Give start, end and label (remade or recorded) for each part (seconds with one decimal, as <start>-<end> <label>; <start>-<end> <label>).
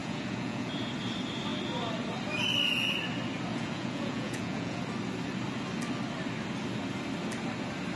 0.0-0.7 remade; 0.7-3.5 recorded; 3.5-4.8 remade; 4.8-8.0 recorded